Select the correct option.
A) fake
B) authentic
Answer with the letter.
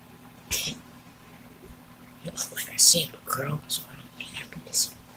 B